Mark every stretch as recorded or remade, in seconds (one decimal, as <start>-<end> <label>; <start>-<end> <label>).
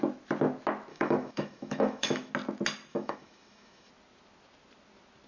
0.0-0.9 recorded; 0.9-2.3 remade; 2.3-2.9 recorded; 2.9-3.9 remade; 3.9-5.3 recorded